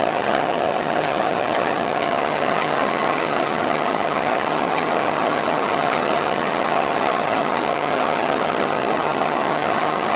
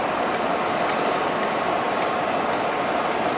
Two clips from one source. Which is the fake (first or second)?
first